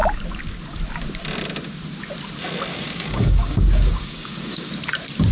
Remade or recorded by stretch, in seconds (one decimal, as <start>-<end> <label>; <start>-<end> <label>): 0.0-2.7 recorded; 2.7-4.7 remade; 4.7-5.3 recorded